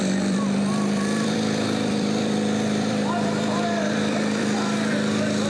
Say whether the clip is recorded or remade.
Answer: remade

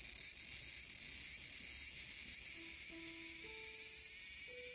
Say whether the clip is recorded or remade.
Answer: recorded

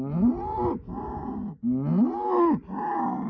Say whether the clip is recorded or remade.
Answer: recorded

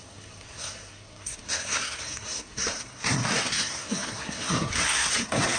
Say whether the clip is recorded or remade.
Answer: remade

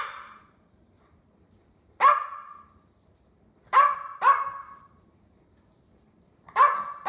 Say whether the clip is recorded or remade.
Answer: recorded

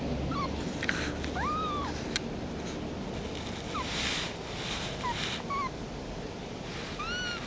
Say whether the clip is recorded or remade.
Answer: recorded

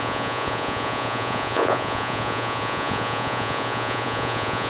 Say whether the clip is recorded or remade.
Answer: remade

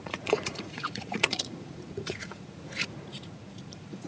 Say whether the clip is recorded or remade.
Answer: remade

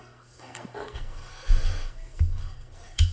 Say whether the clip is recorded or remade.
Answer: remade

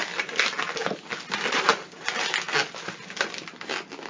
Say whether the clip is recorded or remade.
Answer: recorded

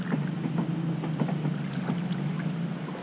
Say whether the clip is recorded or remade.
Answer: recorded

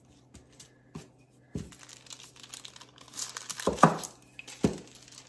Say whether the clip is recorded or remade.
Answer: recorded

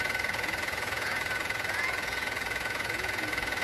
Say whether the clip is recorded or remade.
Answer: remade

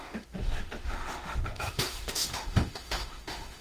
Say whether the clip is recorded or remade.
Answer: remade